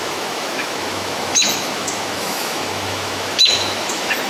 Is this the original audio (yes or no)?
no